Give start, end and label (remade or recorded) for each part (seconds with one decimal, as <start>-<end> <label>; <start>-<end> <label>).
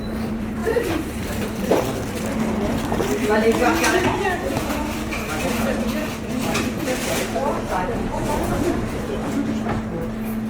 0.0-9.2 remade; 9.2-10.5 recorded